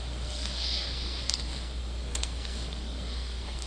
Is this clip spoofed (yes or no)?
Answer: yes